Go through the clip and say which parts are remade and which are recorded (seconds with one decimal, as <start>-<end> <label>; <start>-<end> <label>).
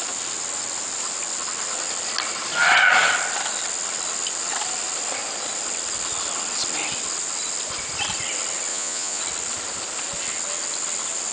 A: 0.0-8.7 recorded; 8.7-9.2 remade; 9.2-11.3 recorded